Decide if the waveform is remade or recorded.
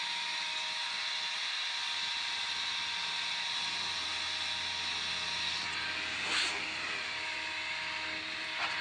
recorded